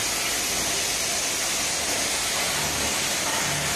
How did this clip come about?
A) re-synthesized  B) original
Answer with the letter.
B